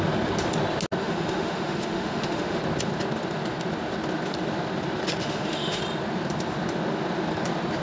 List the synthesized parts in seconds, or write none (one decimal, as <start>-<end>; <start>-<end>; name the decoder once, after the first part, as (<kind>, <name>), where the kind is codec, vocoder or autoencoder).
1.0-2.6 (autoencoder, DAC-VAE); 5.2-5.8